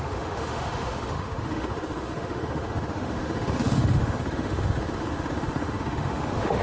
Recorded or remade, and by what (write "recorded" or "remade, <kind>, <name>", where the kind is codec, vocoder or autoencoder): remade, autoencoder, DAC-VAE